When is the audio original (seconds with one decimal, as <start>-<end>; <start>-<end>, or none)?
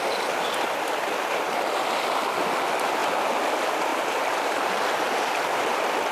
0.0-6.1